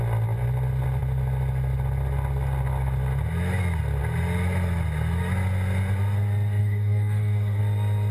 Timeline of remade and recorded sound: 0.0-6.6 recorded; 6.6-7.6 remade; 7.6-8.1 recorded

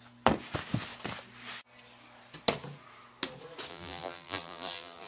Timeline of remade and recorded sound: 0.0-3.7 recorded; 3.7-5.1 remade

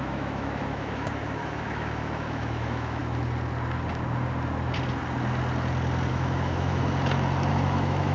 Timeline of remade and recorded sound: 0.0-3.0 remade; 3.0-6.1 recorded; 6.1-6.8 remade; 6.8-7.5 recorded; 7.5-8.1 remade

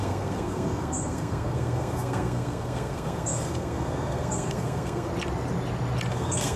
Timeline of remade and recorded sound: 0.0-5.1 remade; 5.1-6.1 recorded; 6.1-6.6 remade

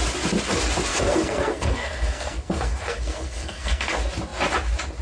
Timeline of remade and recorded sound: 0.0-0.9 recorded; 0.9-3.9 remade; 3.9-5.0 recorded

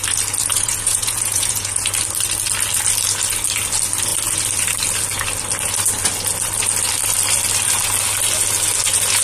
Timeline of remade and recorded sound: 0.0-0.5 recorded; 0.5-1.9 remade; 1.9-9.2 recorded